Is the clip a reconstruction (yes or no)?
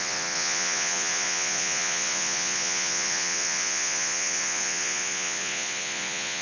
yes